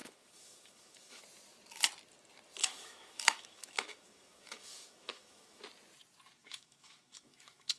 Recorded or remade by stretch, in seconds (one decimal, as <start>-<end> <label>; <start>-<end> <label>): 0.0-1.2 remade; 1.2-2.6 recorded; 2.6-5.6 remade; 5.6-6.4 recorded; 6.4-7.8 remade